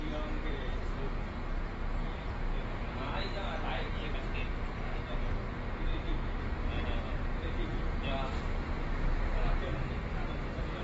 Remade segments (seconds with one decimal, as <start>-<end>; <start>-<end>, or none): 5.9-6.4